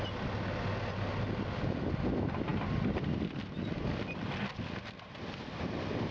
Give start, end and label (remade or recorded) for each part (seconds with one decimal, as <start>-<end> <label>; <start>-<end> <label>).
0.0-2.5 recorded; 2.5-3.9 remade; 3.9-6.1 recorded